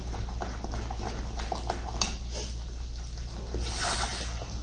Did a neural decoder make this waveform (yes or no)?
no